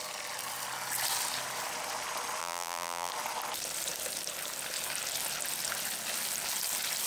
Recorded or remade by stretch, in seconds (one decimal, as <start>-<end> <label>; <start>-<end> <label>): 0.0-2.4 recorded; 2.4-3.1 remade; 3.1-7.1 recorded